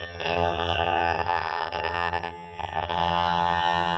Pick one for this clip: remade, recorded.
remade